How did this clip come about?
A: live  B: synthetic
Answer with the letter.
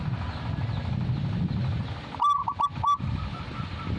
A